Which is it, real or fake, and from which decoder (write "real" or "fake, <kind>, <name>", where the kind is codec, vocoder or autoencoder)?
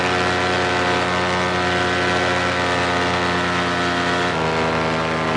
real